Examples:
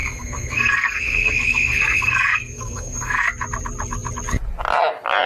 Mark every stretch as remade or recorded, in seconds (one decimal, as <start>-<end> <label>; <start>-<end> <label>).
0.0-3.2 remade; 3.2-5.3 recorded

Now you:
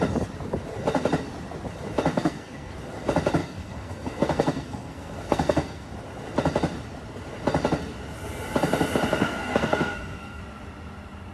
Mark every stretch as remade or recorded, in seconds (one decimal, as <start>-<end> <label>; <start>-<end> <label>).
0.0-2.1 recorded; 2.1-2.7 remade; 2.7-3.4 recorded; 3.4-5.9 remade; 5.9-9.2 recorded; 9.2-10.4 remade; 10.4-11.3 recorded

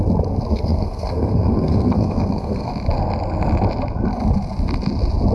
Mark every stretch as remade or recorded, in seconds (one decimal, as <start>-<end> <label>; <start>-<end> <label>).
0.0-0.5 recorded; 0.5-2.7 remade; 2.7-5.3 recorded